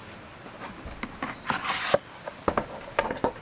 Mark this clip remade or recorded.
recorded